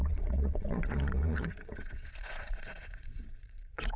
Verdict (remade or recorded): remade